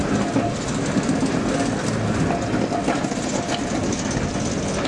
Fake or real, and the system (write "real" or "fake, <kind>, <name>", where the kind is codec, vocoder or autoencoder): real